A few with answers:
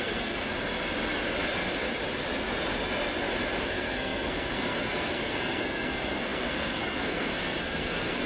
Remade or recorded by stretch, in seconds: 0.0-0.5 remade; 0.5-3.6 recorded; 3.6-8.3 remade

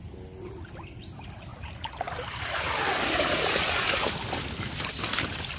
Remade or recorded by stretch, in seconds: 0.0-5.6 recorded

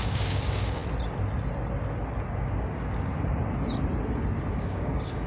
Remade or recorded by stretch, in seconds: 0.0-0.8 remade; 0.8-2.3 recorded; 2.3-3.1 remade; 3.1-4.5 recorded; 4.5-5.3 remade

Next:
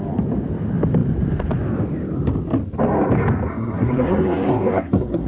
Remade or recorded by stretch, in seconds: 0.0-3.5 recorded; 3.5-5.3 remade

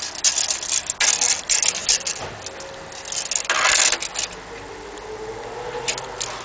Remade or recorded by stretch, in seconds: 0.0-6.4 recorded

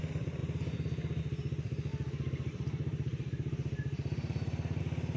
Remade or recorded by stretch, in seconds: 0.0-1.9 recorded; 1.9-4.8 remade; 4.8-5.2 recorded

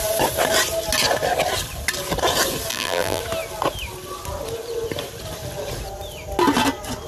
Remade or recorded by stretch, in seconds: 0.0-2.7 recorded; 2.7-3.2 remade; 3.2-7.1 recorded

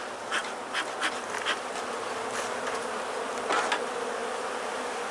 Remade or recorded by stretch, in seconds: 0.0-5.1 recorded